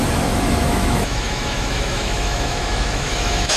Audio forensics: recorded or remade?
remade